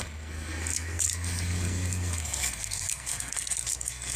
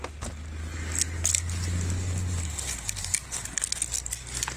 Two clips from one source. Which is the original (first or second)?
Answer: second